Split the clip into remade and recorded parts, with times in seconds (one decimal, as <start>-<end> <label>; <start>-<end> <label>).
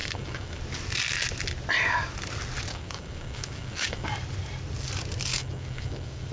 0.0-0.6 remade; 0.6-2.7 recorded; 2.7-4.1 remade; 4.1-5.3 recorded; 5.3-6.3 remade